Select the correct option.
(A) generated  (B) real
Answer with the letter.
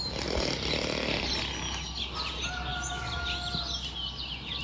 B